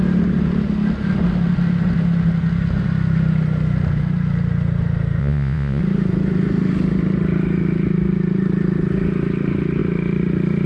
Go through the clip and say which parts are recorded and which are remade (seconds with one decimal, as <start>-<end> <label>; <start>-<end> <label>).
0.0-5.2 recorded; 5.2-5.8 remade; 5.8-10.7 recorded